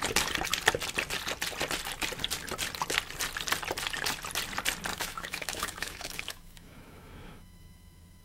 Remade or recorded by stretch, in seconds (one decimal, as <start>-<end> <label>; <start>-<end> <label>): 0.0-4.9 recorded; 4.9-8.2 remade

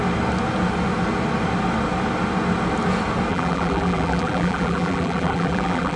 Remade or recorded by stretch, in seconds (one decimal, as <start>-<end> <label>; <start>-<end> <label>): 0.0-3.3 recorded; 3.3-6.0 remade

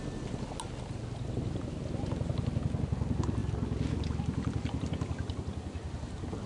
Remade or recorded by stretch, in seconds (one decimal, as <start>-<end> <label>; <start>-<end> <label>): 0.0-6.5 recorded

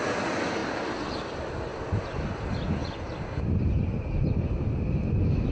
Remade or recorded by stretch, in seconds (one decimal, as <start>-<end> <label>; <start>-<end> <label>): 0.0-5.5 recorded